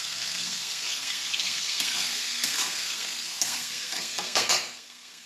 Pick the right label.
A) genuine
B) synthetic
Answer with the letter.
B